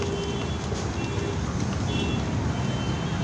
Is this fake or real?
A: real